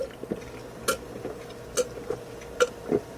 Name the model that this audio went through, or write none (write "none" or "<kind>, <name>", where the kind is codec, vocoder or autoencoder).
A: none